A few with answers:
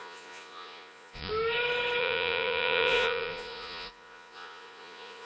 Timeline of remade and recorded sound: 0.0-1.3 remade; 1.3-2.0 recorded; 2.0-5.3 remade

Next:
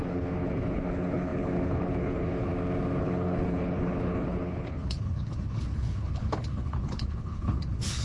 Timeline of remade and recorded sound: 0.0-2.5 remade; 2.5-3.0 recorded; 3.0-8.0 remade

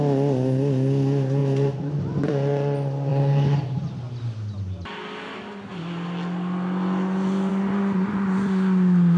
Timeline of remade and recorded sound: 0.0-1.4 recorded; 1.4-2.3 remade; 2.3-3.1 recorded; 3.1-4.0 remade; 4.0-9.2 recorded